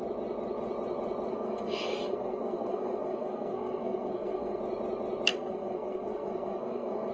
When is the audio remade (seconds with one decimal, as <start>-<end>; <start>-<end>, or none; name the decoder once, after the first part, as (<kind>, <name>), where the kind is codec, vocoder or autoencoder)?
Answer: 1.3-4.6 (codec, SNAC); 5.3-7.1